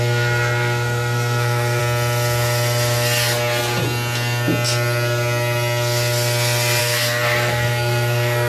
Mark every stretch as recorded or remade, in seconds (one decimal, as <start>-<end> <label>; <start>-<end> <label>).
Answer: 0.0-1.8 remade; 1.8-6.8 recorded; 6.8-8.5 remade